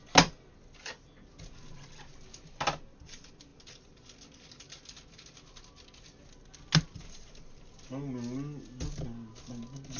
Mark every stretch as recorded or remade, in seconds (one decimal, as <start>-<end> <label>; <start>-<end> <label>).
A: 0.0-10.0 recorded